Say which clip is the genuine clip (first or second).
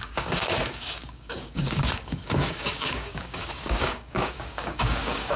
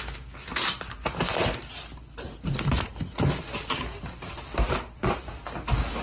second